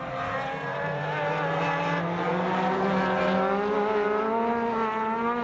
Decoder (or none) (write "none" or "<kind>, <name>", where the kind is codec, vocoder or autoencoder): none